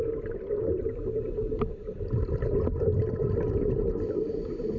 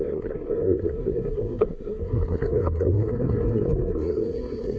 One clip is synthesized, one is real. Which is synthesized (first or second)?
second